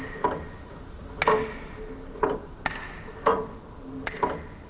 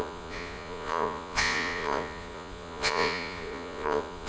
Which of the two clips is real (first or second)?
first